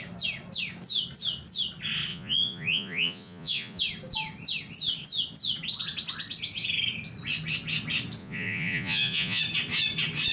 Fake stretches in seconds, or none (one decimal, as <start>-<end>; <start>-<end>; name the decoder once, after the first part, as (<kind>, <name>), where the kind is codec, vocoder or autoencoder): 2.1-3.8 (vocoder, Vocos); 8.2-9.4